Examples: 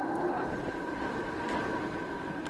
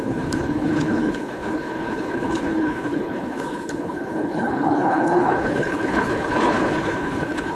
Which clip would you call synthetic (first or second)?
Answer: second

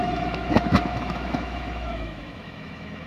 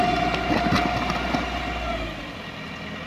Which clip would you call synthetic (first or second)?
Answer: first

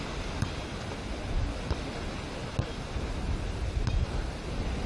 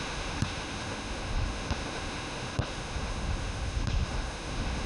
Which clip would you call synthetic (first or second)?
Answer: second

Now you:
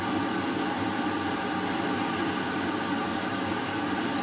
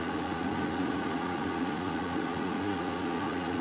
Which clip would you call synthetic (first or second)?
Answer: second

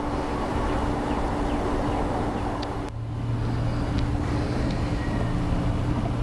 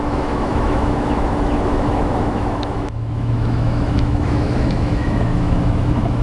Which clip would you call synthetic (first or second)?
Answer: second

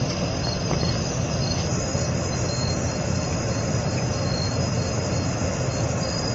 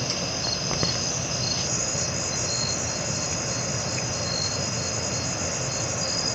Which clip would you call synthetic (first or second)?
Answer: first